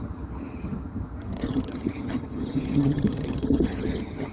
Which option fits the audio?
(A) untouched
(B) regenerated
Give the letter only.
B